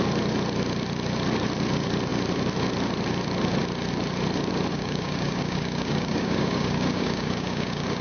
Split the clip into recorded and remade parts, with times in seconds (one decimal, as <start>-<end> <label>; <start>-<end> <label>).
0.0-4.7 recorded; 4.7-8.0 remade